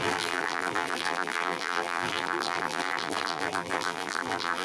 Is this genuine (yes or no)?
no